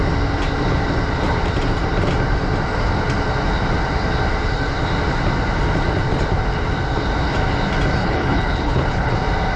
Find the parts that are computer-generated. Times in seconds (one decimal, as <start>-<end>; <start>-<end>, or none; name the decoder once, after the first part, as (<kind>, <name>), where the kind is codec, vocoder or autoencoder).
8.0-9.1 (codec, HILCodec)